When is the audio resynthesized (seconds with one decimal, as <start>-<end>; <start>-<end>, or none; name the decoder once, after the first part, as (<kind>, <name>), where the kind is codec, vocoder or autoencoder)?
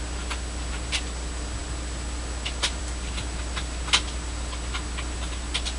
none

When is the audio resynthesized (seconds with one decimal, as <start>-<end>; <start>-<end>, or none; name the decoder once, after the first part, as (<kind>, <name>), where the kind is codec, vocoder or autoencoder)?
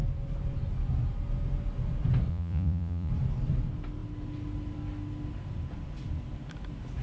2.3-3.1 (vocoder, Vocos)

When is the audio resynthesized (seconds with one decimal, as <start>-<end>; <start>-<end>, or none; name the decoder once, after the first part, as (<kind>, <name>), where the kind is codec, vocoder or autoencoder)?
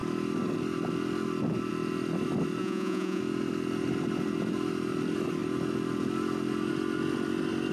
2.6-3.2 (vocoder, Vocos)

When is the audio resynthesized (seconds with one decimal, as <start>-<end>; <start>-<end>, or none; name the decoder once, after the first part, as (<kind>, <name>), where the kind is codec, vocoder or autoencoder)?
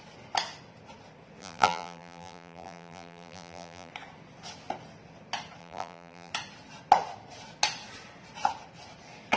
1.4-3.9 (vocoder, BigVGAN v2); 5.6-6.3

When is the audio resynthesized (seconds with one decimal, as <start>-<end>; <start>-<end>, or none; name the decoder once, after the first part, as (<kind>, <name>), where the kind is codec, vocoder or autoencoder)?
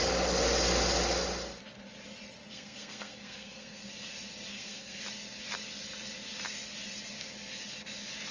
2.4-3.9 (codec, SNAC); 4.5-5.0